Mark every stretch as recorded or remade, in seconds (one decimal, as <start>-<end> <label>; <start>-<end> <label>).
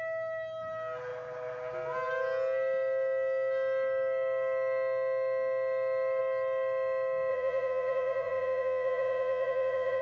0.0-7.3 recorded; 7.3-10.0 remade